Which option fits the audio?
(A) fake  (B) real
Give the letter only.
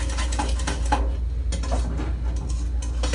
B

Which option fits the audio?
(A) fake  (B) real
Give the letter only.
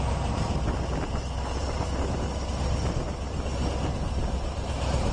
B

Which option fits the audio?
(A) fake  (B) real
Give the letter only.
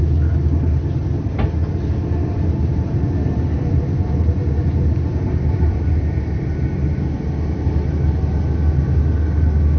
B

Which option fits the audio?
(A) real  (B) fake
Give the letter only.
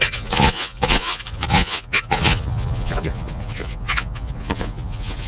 B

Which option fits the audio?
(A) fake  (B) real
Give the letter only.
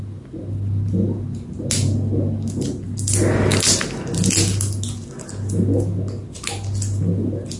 B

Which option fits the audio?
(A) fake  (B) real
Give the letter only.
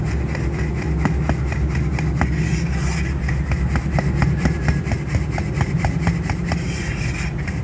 B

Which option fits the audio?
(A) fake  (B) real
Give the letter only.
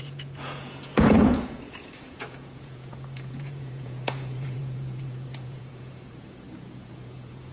A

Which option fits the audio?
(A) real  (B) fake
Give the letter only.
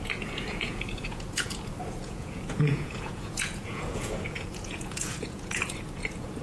B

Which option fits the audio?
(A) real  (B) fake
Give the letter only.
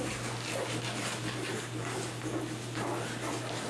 A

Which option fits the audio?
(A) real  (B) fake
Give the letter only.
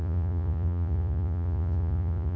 B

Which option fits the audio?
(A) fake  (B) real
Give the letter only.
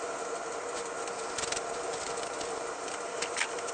B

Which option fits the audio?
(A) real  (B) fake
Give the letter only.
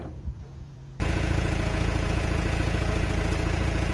B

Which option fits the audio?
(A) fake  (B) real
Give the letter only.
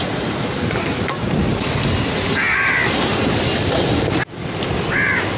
B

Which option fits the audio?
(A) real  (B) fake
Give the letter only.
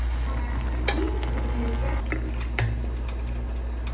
A